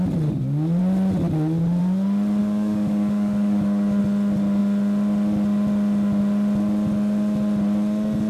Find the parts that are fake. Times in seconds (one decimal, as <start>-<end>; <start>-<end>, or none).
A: 2.4-4.0